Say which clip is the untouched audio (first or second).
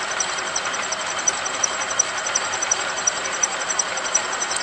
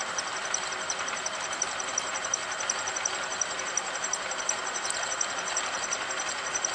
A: second